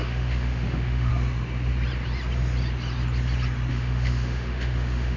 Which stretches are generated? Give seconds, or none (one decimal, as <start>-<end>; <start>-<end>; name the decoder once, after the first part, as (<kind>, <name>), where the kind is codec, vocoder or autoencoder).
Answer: 0.0-1.1 (autoencoder, DAC-VAE); 3.7-5.2